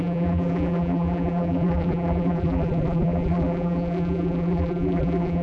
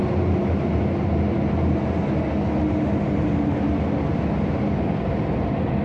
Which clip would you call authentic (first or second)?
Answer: second